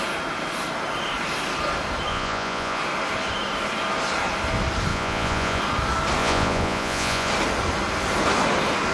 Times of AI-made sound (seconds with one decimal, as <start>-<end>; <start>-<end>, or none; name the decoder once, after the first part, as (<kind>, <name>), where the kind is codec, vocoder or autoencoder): 2.1-2.8 (vocoder, Vocos); 4.9-5.6; 6.2-7.3